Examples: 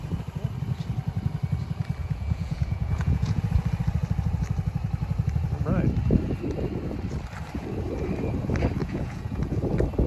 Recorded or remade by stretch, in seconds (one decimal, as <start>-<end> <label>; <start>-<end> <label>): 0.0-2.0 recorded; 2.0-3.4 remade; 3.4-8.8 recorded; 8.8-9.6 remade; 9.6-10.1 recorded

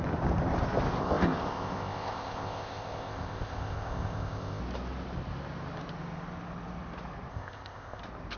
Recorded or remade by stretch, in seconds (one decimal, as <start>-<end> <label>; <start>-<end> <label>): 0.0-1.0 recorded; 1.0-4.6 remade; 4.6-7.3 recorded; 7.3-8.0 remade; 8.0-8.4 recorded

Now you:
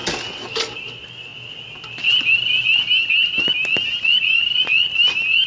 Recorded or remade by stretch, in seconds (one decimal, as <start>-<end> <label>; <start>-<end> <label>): 0.0-5.5 recorded

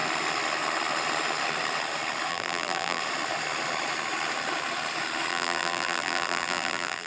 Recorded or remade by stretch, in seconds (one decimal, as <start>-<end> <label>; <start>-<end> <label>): 0.0-2.3 recorded; 2.3-3.0 remade; 3.0-5.3 recorded; 5.3-7.1 remade

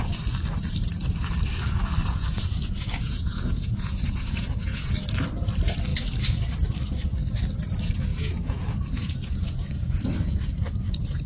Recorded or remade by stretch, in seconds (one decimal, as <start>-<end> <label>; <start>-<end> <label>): 0.0-2.0 recorded; 2.0-4.9 remade; 4.9-8.1 recorded; 8.1-10.4 remade; 10.4-11.3 recorded